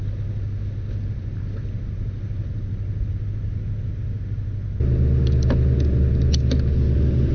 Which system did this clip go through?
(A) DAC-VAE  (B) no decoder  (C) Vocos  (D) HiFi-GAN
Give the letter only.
B